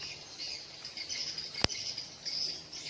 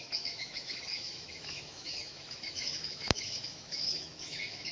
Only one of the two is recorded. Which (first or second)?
first